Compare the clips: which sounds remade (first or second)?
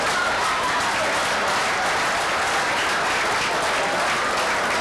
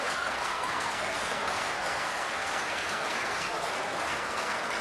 second